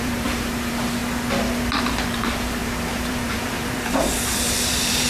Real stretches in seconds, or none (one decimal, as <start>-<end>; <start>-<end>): 1.0-1.8